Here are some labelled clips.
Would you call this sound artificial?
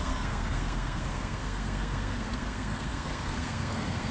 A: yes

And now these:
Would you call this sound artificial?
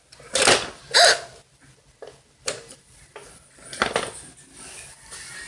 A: no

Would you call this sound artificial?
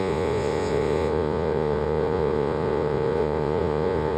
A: yes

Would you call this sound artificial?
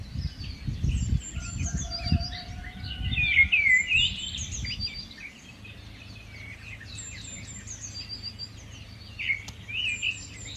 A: no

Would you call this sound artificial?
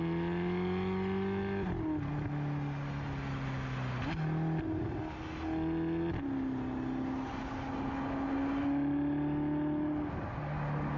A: no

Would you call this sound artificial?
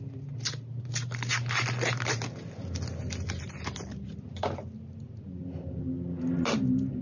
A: no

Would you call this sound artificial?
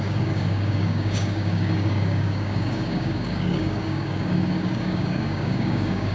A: yes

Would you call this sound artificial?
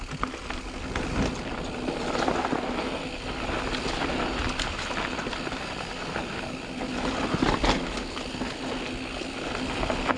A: no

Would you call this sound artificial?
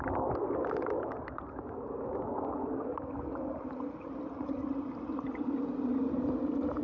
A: no